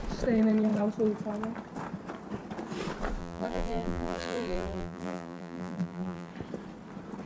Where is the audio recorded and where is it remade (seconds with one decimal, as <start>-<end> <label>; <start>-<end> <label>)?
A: 0.0-3.2 recorded; 3.2-6.3 remade; 6.3-7.3 recorded